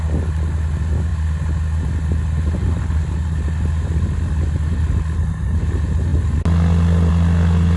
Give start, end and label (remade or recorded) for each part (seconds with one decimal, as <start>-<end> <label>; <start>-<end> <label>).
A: 0.0-7.8 recorded